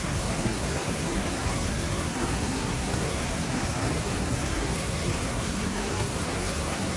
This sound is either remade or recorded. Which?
remade